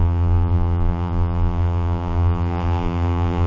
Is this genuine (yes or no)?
no